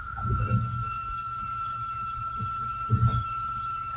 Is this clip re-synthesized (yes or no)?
no